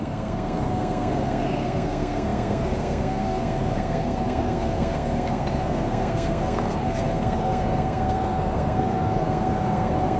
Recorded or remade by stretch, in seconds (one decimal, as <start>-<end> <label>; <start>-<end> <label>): 0.0-10.2 remade